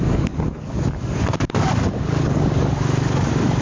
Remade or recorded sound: remade